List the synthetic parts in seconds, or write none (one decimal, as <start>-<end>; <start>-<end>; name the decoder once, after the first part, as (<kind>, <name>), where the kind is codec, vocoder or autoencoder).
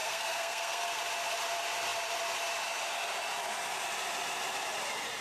0.0-1.0 (codec, SNAC)